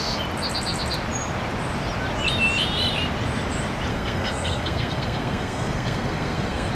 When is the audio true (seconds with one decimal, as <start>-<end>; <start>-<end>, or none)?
0.0-3.9